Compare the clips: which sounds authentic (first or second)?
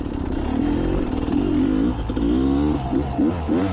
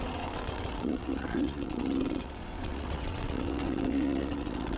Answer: first